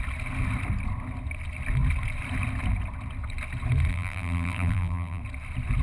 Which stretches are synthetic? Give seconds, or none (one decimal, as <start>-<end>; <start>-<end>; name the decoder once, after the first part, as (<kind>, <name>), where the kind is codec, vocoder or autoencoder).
3.9-5.2 (vocoder, BigVGAN v2)